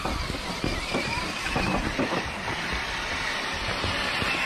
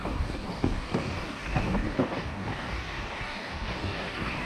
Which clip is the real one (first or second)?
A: first